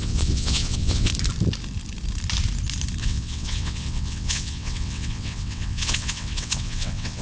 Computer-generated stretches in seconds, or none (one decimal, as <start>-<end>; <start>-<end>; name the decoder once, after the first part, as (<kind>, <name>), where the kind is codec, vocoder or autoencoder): 0.0-1.1 (vocoder, WaveNeXt); 3.0-7.2